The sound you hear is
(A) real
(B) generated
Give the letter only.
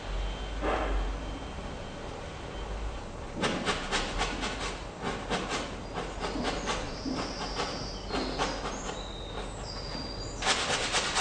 A